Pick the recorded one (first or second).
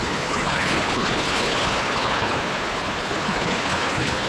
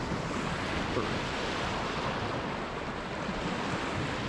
second